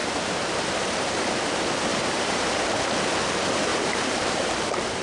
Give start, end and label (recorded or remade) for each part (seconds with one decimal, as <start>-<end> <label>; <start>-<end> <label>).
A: 0.0-1.1 remade; 1.1-1.9 recorded; 1.9-2.6 remade; 2.6-3.7 recorded; 3.7-4.6 remade; 4.6-5.0 recorded